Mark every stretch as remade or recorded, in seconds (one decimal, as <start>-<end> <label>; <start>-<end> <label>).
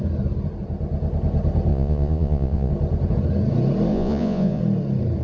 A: 0.0-1.7 recorded; 1.7-2.7 remade; 2.7-3.9 recorded; 3.9-4.6 remade; 4.6-5.2 recorded